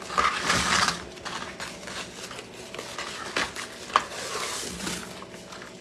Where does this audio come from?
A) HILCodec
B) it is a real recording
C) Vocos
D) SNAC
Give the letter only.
B